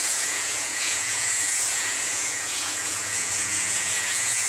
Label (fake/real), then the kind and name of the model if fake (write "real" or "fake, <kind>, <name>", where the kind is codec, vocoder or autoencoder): fake, vocoder, Vocos